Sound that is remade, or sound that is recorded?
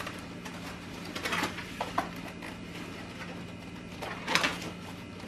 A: recorded